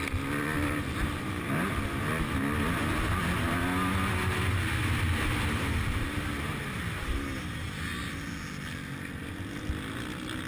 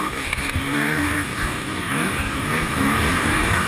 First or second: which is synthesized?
second